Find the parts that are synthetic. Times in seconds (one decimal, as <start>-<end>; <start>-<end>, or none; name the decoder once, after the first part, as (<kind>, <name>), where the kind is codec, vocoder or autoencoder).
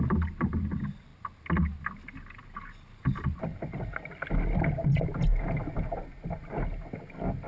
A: none